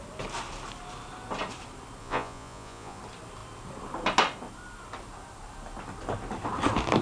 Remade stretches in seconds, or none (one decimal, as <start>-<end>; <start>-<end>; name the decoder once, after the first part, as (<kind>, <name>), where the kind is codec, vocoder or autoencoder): 2.0-3.0 (vocoder, Vocos)